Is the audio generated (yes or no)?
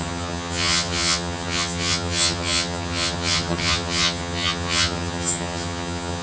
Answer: yes